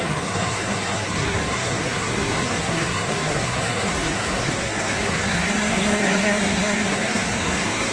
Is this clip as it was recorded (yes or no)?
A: no